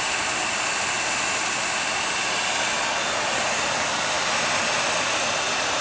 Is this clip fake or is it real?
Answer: real